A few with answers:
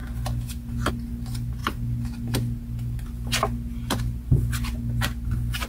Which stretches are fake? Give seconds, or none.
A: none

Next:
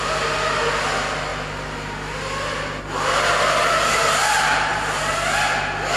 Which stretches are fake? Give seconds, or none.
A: none